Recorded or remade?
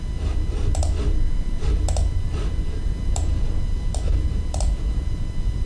remade